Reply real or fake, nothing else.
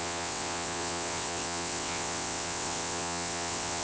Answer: fake